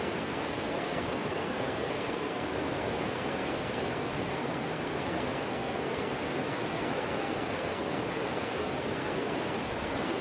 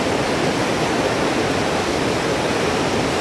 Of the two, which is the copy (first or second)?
first